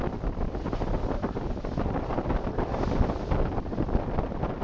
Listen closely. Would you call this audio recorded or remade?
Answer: recorded